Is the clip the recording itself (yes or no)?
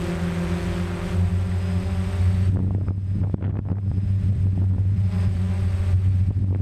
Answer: yes